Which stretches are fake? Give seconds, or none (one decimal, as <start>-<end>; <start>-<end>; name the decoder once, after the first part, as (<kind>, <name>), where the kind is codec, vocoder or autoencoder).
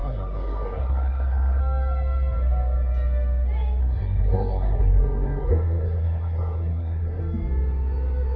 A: 0.0-1.6 (codec, SNAC); 3.8-7.2